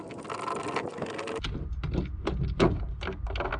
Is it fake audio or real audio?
real